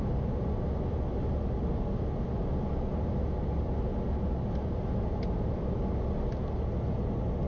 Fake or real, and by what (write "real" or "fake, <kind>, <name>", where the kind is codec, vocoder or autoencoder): real